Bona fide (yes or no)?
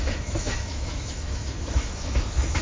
no